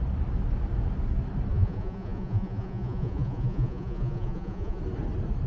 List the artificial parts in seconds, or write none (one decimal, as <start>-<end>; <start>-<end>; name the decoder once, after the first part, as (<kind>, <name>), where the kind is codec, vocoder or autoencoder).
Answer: 1.5-4.8 (vocoder, Vocos)